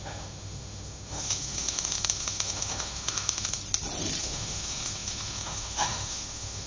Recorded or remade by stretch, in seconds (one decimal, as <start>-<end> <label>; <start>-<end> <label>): 0.0-3.6 remade; 3.6-4.2 recorded; 4.2-6.7 remade